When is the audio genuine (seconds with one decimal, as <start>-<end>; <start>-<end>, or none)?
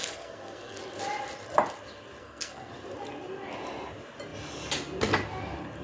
0.8-2.2; 2.7-5.8